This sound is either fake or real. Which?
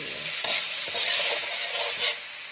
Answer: real